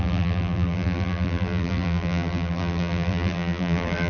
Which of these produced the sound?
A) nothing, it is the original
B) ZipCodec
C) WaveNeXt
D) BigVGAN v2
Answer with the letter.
D